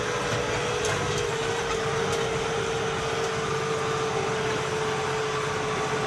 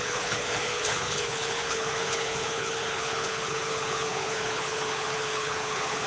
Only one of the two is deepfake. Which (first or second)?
second